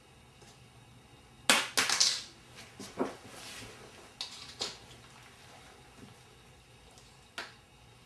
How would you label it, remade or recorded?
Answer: recorded